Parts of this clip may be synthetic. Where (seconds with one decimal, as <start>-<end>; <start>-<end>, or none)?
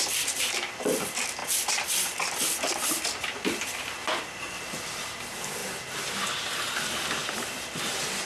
0.0-5.6; 6.7-8.3